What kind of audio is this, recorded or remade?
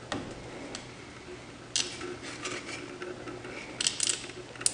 recorded